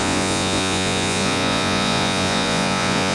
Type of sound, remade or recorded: remade